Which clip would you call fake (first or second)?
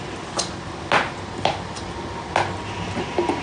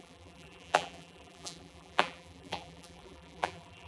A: second